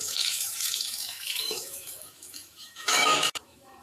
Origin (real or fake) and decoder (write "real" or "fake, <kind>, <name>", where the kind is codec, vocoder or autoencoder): fake, autoencoder, DAC-VAE